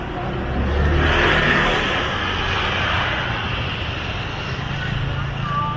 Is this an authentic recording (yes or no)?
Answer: yes